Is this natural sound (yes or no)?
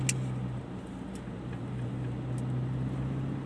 yes